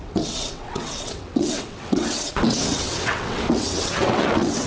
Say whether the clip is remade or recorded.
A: remade